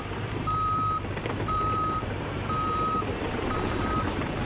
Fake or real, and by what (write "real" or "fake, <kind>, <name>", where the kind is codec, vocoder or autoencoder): fake, vocoder, BigVGAN v2